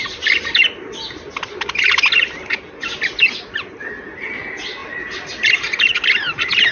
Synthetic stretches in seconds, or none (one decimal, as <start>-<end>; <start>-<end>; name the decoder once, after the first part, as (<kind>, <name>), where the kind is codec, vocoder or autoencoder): none